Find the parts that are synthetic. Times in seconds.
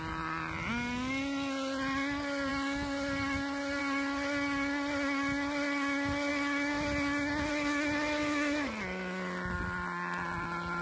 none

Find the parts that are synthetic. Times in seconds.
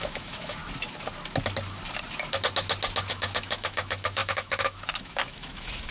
0.0-0.6; 3.1-5.9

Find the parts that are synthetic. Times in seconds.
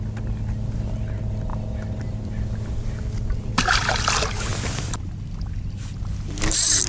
none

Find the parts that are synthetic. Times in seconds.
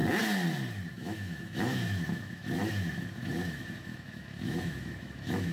0.9-5.5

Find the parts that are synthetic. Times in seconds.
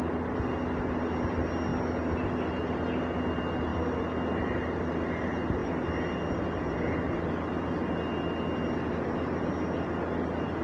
none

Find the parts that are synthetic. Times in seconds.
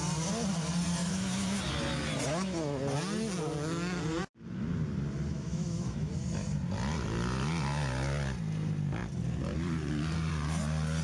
1.0-1.6; 5.3-6.1